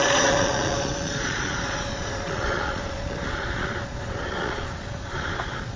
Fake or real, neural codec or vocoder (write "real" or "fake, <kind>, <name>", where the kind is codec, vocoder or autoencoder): fake, vocoder, Vocos